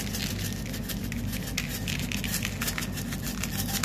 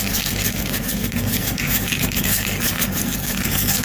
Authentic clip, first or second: first